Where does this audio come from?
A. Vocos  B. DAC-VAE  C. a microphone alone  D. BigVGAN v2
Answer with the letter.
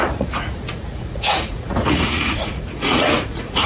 A